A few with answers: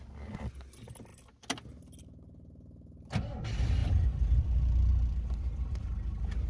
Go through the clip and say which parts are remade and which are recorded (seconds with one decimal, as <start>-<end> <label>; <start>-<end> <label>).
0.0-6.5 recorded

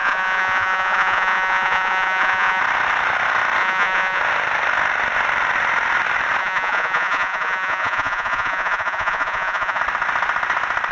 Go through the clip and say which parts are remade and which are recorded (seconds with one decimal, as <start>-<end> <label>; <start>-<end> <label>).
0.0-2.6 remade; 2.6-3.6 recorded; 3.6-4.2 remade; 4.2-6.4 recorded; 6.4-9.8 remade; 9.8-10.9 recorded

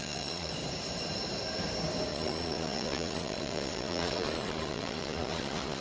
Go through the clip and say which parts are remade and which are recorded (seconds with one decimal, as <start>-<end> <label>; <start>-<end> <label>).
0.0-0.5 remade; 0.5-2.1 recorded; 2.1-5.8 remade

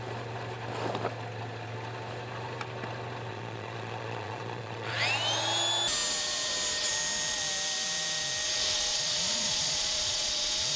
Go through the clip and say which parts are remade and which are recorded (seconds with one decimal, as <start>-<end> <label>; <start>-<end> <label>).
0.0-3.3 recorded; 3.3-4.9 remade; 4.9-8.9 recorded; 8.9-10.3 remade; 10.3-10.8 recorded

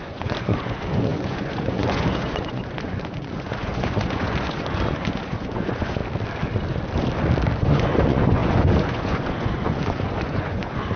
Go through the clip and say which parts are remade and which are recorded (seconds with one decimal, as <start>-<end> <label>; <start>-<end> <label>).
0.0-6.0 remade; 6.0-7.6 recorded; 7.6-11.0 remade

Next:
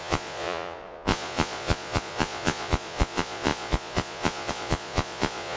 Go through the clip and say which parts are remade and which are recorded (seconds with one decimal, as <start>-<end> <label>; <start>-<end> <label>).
0.0-5.6 remade

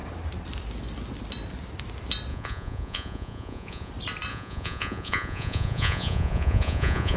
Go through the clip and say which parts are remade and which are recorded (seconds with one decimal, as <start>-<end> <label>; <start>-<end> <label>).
0.0-2.3 recorded; 2.3-3.9 remade; 3.9-4.3 recorded; 4.3-7.2 remade

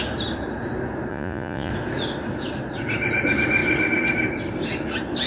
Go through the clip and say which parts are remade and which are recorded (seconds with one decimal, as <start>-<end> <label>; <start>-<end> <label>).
0.0-1.1 recorded; 1.1-1.7 remade; 1.7-5.3 recorded